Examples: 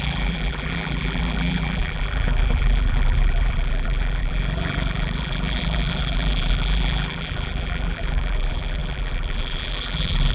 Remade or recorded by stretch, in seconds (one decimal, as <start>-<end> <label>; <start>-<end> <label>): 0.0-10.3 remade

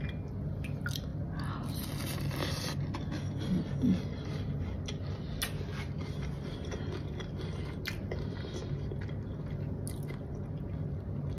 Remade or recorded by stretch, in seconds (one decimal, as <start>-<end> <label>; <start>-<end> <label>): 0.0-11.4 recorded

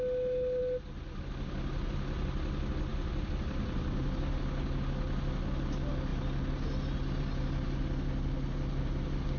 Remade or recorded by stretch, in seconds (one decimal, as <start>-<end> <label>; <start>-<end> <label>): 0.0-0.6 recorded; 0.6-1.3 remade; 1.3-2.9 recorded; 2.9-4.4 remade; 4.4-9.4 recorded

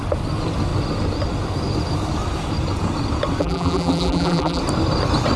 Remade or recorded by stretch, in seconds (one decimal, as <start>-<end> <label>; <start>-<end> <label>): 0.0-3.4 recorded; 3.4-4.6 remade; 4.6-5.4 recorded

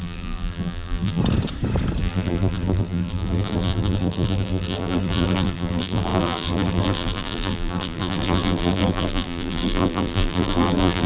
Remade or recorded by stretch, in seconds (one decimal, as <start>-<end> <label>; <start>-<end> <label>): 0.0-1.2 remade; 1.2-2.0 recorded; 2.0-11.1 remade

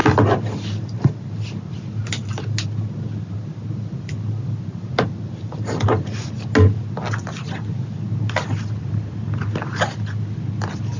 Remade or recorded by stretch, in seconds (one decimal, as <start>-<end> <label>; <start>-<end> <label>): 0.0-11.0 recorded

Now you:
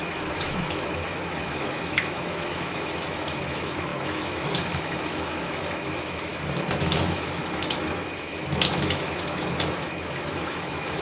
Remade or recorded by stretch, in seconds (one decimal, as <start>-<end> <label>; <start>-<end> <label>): 0.0-6.3 remade; 6.3-6.8 recorded; 6.8-11.0 remade

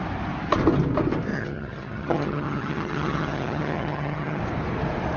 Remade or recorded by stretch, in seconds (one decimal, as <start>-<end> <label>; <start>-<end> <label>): 0.0-1.3 recorded; 1.3-4.4 remade; 4.4-5.2 recorded